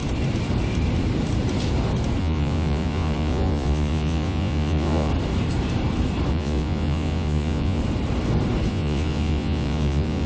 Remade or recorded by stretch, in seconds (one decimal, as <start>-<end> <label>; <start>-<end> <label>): 0.0-2.2 recorded; 2.2-5.1 remade; 5.1-6.3 recorded; 6.3-7.8 remade; 7.8-8.7 recorded; 8.7-10.3 remade